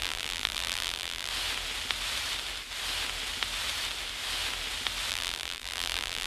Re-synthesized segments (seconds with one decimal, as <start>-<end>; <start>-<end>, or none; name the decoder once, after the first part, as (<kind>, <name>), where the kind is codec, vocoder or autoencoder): 0.0-1.3 (vocoder, BigVGAN v2); 5.1-6.3